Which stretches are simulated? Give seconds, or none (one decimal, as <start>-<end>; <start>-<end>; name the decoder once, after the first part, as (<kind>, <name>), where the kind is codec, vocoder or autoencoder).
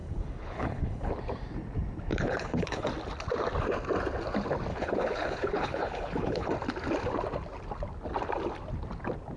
0.0-1.1 (codec, HILCodec); 2.1-2.9; 4.7-6.5